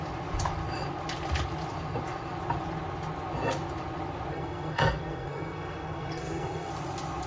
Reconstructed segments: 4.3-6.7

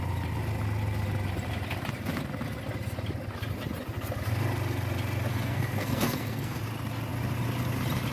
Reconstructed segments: 5.3-6.6

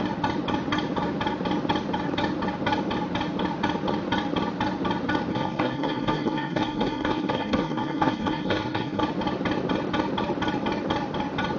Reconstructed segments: 5.3-9.0

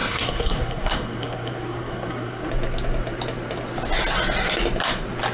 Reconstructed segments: 0.0-2.5

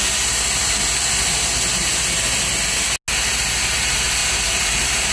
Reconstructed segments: none

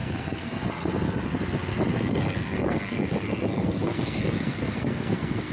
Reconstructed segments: 0.0-0.7; 1.9-5.5

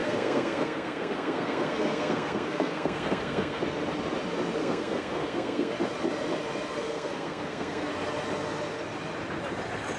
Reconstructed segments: 0.0-3.6; 4.6-5.7; 6.8-7.9

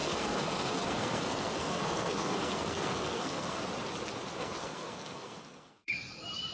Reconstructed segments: 0.0-3.6; 4.4-5.9